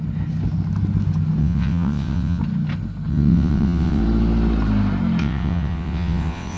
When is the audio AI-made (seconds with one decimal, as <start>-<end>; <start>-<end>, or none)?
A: 1.4-2.4; 3.1-4.0; 5.2-6.6